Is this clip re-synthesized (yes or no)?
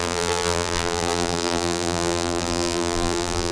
yes